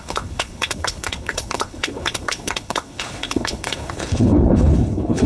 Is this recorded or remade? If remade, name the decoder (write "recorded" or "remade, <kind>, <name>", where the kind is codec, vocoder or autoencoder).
remade, codec, HILCodec